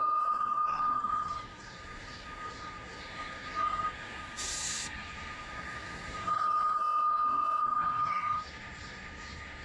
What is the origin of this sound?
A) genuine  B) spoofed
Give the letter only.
B